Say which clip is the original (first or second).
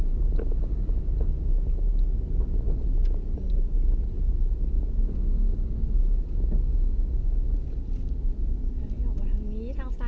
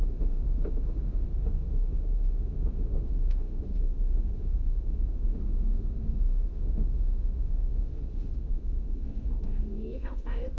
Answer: first